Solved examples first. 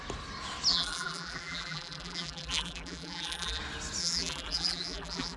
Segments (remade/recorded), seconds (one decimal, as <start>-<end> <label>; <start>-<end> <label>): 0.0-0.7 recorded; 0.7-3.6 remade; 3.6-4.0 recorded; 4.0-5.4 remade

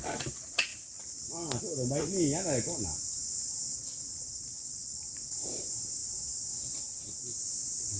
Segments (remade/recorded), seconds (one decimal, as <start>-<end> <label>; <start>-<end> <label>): 0.0-8.0 recorded

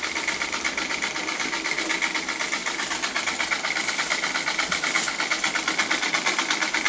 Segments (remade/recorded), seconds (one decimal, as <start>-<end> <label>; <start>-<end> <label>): 0.0-6.9 recorded

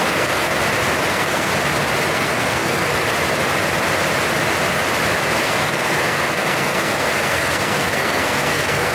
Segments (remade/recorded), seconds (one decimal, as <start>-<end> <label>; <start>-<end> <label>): 0.0-0.5 remade; 0.5-1.1 recorded; 1.1-1.5 remade; 1.5-2.1 recorded; 2.1-2.9 remade; 2.9-5.4 recorded; 5.4-8.9 remade